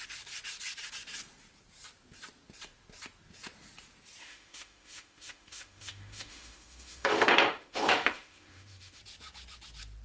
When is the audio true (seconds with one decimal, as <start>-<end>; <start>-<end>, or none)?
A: 0.0-4.2; 9.0-10.0